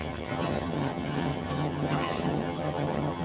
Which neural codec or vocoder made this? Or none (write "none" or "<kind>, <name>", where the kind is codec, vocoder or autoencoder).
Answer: vocoder, HiFi-GAN